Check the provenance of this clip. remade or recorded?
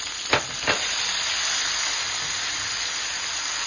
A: recorded